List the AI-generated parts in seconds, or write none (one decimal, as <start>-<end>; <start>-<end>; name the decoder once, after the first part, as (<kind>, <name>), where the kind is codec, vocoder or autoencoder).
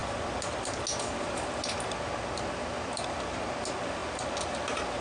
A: none